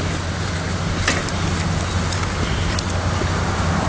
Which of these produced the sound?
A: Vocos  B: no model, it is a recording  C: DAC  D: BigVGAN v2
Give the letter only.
B